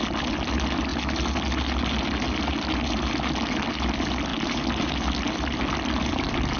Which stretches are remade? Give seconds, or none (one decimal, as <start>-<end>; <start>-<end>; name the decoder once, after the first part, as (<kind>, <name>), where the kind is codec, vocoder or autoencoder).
0.0-0.9 (vocoder, BigVGAN v2); 3.8-4.3; 6.1-6.6